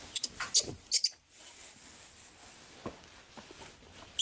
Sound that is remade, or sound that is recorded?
recorded